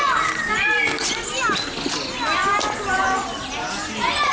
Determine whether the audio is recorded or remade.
recorded